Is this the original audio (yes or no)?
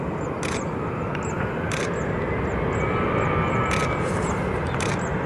yes